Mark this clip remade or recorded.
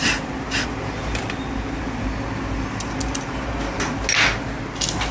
recorded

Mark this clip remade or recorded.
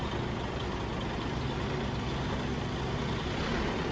recorded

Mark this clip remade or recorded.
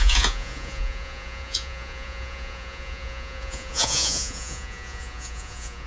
remade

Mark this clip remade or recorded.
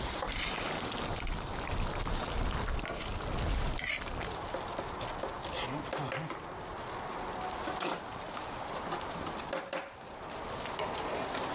recorded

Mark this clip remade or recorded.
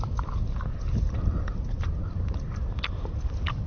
recorded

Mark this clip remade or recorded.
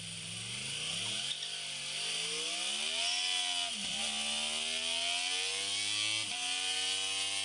recorded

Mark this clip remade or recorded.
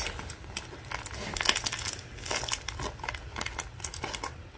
recorded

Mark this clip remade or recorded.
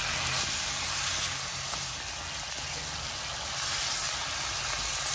recorded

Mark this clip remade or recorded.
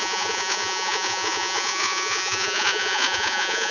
remade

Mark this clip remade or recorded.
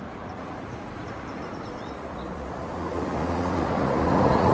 remade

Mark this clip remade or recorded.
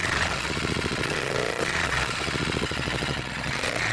remade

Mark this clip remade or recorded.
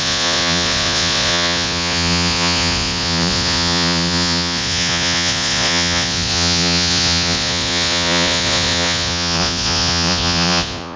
remade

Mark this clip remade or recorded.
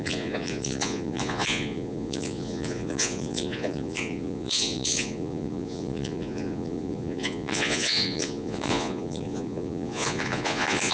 remade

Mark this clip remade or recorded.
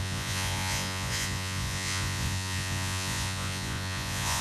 remade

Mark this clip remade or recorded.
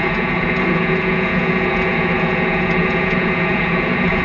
remade